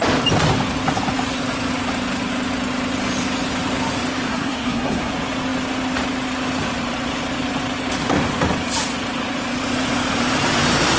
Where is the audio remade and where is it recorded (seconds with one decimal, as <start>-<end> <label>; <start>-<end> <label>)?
0.0-4.3 recorded; 4.3-5.1 remade; 5.1-11.0 recorded

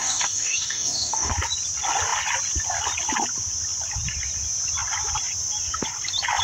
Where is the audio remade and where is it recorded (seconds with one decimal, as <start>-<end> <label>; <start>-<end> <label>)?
0.0-1.3 remade; 1.3-6.4 recorded

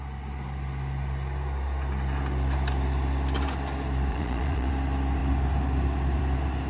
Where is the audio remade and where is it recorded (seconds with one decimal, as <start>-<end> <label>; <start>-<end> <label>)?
0.0-4.1 recorded; 4.1-4.7 remade; 4.7-6.7 recorded

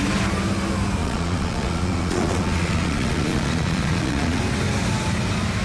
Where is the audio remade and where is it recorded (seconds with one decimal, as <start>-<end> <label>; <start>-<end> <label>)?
0.0-1.0 recorded; 1.0-4.4 remade; 4.4-5.6 recorded

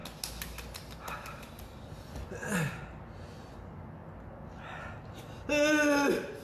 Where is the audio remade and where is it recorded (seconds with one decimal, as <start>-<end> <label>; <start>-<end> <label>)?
0.0-6.4 recorded